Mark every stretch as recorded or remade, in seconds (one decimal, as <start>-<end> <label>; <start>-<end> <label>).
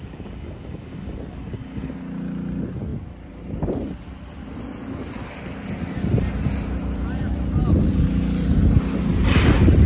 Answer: 0.0-2.0 remade; 2.0-9.9 recorded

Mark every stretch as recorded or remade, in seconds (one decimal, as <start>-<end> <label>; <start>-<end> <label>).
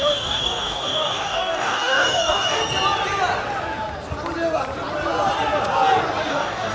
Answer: 0.0-2.6 remade; 2.6-6.3 recorded; 6.3-6.7 remade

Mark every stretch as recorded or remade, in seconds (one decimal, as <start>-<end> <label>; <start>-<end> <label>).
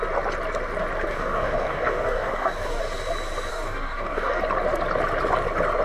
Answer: 0.0-1.1 recorded; 1.1-2.8 remade; 2.8-3.5 recorded; 3.5-4.4 remade; 4.4-5.8 recorded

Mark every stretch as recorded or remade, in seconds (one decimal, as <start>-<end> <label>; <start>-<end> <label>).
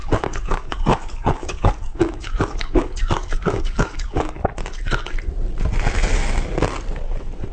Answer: 0.0-4.4 remade; 4.4-7.5 recorded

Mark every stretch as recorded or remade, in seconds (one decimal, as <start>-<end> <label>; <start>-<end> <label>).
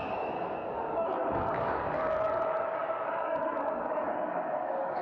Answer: 0.0-5.0 remade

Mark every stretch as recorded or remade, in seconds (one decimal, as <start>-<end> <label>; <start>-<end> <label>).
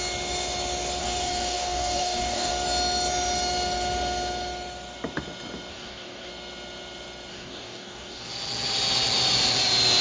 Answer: 0.0-1.0 recorded; 1.0-2.5 remade; 2.5-5.7 recorded; 5.7-6.3 remade; 6.3-7.3 recorded; 7.3-8.3 remade; 8.3-10.0 recorded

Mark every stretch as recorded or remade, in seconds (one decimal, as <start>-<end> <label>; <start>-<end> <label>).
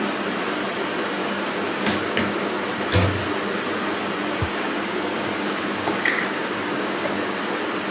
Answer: 0.0-1.2 recorded; 1.2-2.5 remade; 2.5-4.4 recorded; 4.4-7.2 remade; 7.2-7.9 recorded